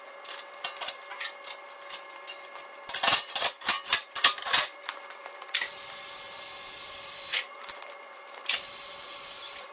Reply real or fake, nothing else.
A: fake